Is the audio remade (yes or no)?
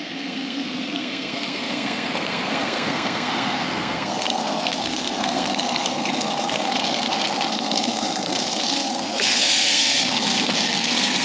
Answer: yes